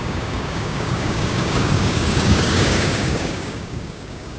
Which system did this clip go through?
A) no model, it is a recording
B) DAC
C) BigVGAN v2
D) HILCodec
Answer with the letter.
B